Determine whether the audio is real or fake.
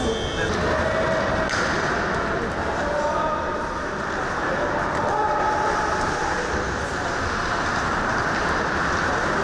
real